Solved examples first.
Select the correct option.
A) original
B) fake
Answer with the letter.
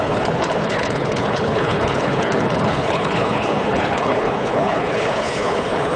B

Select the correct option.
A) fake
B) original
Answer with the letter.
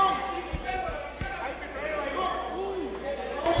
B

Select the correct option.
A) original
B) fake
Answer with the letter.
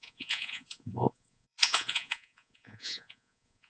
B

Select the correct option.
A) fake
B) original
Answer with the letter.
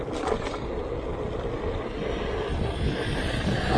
B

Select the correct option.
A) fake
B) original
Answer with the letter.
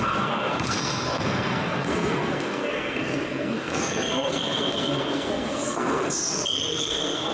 A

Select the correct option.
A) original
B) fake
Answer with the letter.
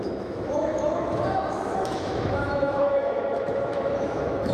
B